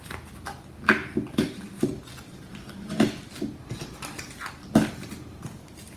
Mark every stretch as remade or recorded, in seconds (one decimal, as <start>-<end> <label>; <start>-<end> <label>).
0.0-6.0 recorded